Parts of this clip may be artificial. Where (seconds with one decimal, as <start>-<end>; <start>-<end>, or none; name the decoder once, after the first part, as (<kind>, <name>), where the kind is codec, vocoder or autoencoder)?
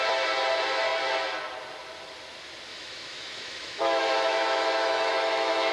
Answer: 2.7-5.7 (autoencoder, DAC-VAE)